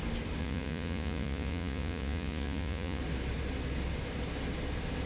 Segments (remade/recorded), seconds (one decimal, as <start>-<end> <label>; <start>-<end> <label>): 0.0-0.4 recorded; 0.4-3.0 remade; 3.0-5.1 recorded